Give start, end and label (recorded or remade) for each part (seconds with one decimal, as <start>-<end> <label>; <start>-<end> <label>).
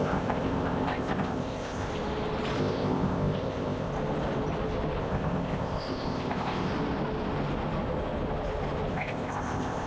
0.0-1.9 remade; 1.9-2.6 recorded; 2.6-3.9 remade; 3.9-5.0 recorded; 5.0-6.7 remade; 6.7-8.9 recorded; 8.9-9.9 remade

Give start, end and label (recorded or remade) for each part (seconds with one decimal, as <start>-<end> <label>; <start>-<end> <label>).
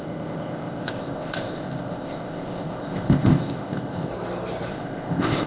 0.0-4.1 remade; 4.1-4.7 recorded; 4.7-5.5 remade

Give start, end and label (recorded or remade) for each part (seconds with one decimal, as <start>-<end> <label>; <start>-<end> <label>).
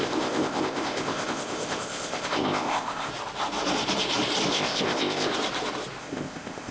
0.0-3.1 remade; 3.1-4.5 recorded; 4.5-5.3 remade; 5.3-6.0 recorded; 6.0-6.7 remade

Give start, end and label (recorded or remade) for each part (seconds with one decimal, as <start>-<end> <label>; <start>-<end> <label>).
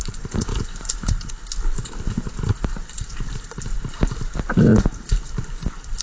0.0-6.0 recorded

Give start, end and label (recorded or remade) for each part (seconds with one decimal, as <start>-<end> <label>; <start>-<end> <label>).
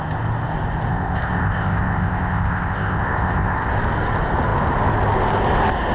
0.0-0.9 recorded; 0.9-3.7 remade; 3.7-5.9 recorded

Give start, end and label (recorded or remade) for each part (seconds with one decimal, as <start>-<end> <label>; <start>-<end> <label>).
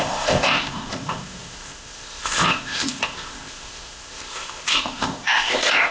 0.0-5.9 remade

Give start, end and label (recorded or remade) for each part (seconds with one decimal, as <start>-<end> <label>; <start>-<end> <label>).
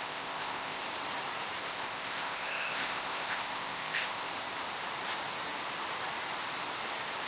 0.0-0.8 remade; 0.8-1.6 recorded; 1.6-4.3 remade; 4.3-7.3 recorded